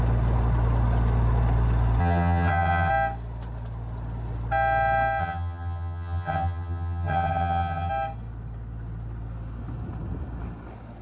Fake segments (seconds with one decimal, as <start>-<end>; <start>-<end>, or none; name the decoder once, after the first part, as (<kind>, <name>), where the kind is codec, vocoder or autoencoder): 2.0-2.9 (vocoder, HiFi-GAN); 5.2-7.9